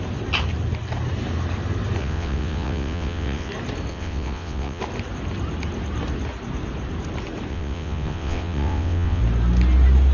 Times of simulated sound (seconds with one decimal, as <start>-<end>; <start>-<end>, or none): 2.0-3.5; 3.9-4.8; 7.5-9.2